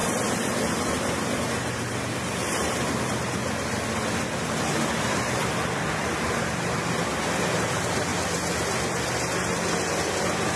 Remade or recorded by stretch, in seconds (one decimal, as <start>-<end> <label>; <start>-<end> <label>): 0.0-3.4 remade; 3.4-5.0 recorded; 5.0-8.1 remade; 8.1-10.6 recorded